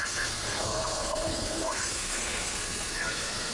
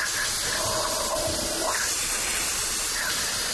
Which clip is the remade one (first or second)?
first